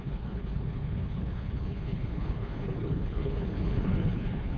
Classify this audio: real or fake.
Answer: fake